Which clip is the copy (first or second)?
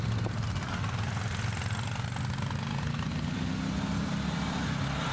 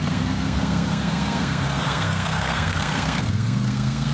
second